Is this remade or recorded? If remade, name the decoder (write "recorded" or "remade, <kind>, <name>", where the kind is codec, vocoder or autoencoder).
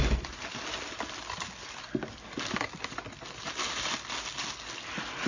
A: recorded